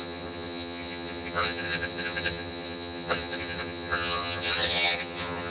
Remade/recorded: remade